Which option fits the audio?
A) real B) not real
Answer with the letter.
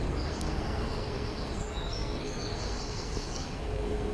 B